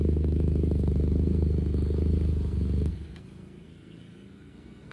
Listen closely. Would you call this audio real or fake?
fake